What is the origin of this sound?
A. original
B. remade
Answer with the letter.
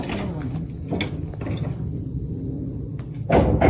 A